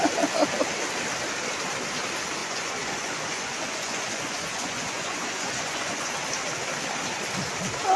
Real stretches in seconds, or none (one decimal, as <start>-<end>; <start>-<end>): 0.0-2.4; 6.1-8.0

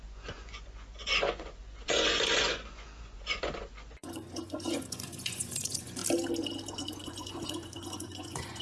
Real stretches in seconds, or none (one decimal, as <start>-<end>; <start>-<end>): 6.0-6.7

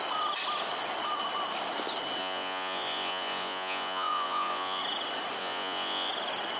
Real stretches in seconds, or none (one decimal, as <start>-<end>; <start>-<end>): 0.0-2.2; 4.8-5.4; 6.1-6.6

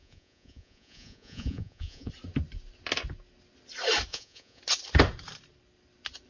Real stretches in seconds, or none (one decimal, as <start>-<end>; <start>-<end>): 2.1-4.1; 4.6-6.3